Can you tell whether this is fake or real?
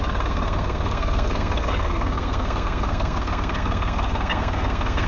fake